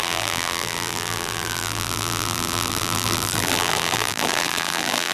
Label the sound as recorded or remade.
remade